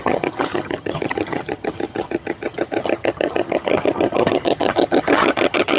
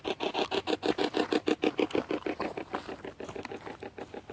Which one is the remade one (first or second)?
first